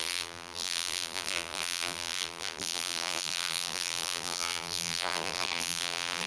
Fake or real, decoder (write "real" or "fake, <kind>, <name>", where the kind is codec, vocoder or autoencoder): fake, vocoder, BigVGAN v2